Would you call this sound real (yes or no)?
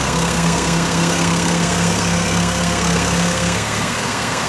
no